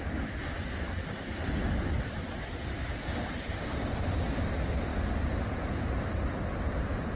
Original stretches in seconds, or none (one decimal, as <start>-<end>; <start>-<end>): 0.0-1.4; 4.0-7.2